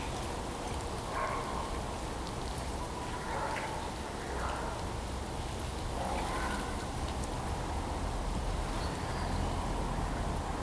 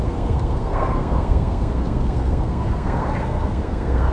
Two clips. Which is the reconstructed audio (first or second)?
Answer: second